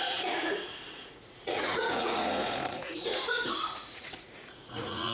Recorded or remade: remade